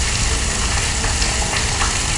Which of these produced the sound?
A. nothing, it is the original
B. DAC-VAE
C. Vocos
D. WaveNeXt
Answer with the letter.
A